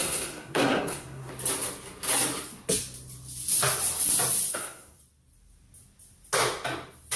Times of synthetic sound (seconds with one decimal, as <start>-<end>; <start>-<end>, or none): 0.0-1.3; 4.5-5.0